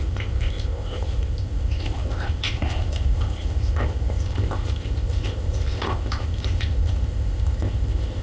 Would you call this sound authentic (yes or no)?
no